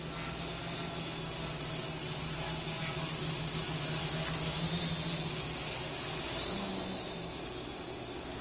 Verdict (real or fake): real